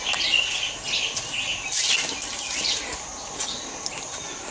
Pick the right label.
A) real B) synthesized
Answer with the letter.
A